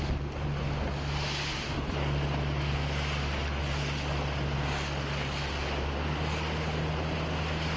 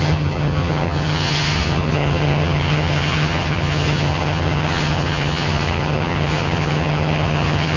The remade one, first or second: second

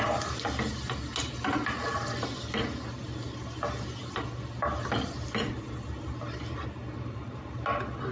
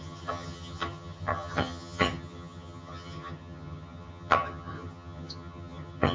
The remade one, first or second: second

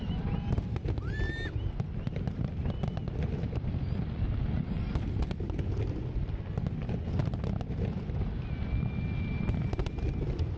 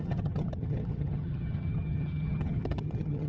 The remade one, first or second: second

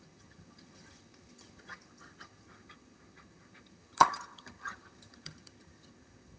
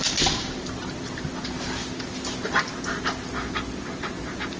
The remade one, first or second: first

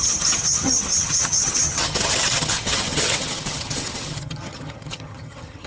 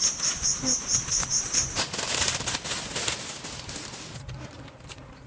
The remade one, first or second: first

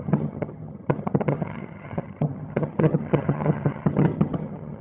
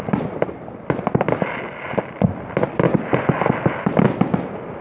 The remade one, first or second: first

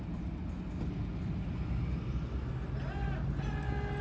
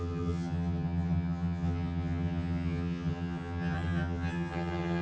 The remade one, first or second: second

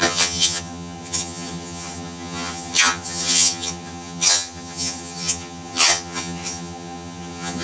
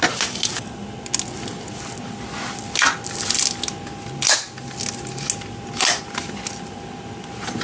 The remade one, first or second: first